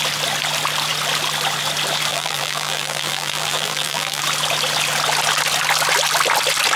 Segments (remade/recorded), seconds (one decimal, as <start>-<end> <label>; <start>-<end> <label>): 0.0-2.1 recorded; 2.1-4.2 remade; 4.2-6.8 recorded